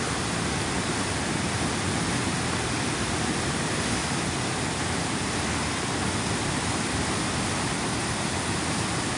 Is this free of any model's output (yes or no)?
yes